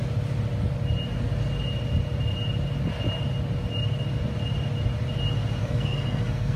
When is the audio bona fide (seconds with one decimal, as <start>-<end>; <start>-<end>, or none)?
0.0-5.6